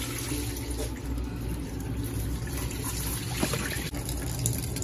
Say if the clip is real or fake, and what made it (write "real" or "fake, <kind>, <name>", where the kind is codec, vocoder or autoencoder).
real